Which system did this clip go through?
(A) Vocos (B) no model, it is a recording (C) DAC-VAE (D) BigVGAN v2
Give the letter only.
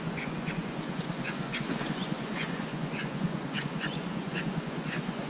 A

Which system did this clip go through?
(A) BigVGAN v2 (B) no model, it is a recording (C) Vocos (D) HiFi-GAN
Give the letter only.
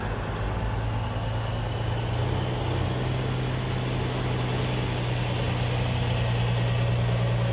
B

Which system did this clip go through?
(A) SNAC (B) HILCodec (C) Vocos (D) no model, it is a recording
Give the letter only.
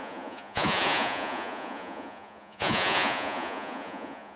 C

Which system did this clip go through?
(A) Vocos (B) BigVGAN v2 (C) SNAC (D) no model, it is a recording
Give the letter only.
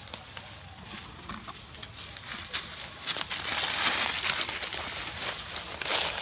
D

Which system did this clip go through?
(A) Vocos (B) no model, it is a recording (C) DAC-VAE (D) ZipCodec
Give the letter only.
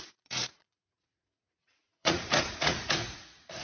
A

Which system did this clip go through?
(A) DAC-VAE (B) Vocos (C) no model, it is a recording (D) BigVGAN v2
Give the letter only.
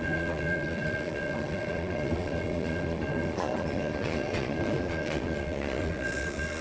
B